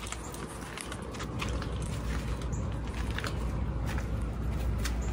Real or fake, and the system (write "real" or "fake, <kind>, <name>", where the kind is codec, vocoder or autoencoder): real